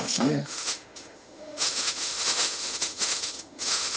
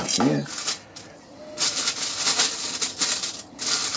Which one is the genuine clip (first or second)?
second